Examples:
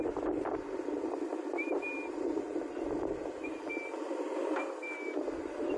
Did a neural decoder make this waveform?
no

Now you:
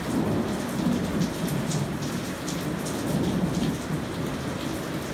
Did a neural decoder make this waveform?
no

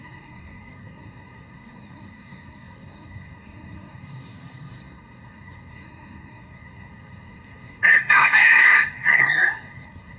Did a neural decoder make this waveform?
yes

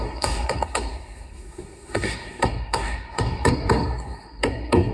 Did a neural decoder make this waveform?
yes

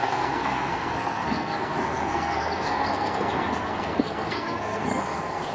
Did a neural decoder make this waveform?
yes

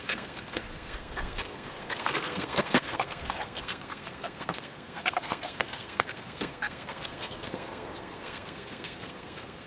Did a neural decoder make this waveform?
yes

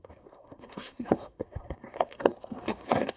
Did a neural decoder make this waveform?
yes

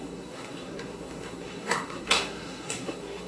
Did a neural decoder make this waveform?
yes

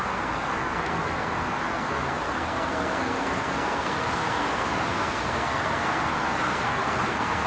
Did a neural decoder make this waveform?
yes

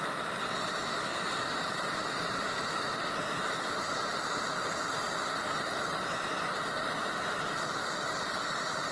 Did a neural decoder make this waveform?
no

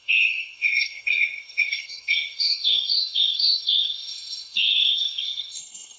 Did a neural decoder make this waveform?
yes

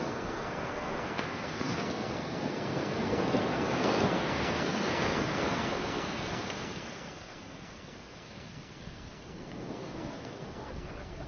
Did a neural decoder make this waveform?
yes